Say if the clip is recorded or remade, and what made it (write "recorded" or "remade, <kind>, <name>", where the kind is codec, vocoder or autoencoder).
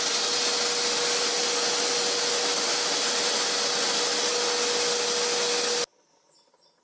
recorded